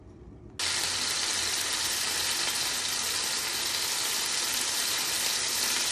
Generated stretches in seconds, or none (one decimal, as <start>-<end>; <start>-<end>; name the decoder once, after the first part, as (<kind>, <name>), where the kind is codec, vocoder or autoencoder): none